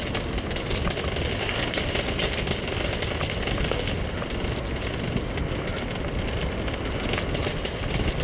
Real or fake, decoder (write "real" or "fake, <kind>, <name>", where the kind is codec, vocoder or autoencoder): real